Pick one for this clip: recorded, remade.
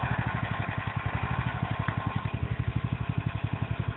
recorded